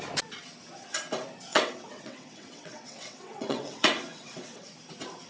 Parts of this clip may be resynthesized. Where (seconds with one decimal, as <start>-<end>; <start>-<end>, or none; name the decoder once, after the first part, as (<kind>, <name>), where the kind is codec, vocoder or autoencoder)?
1.5-4.7 (vocoder, WaveNeXt)